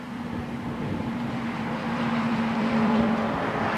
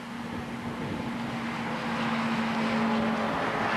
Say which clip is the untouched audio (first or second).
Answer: second